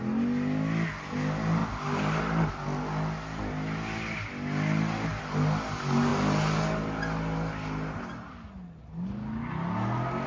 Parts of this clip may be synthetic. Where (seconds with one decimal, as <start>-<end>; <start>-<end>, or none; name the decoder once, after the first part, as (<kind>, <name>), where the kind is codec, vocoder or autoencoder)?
none